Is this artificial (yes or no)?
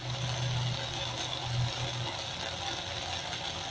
no